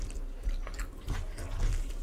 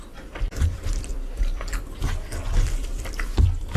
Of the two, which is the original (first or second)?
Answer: first